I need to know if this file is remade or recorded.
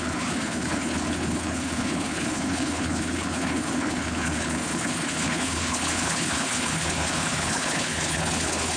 remade